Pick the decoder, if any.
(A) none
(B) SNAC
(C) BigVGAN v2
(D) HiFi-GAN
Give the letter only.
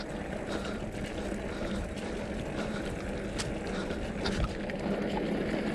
A